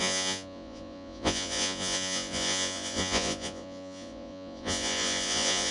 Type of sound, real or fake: fake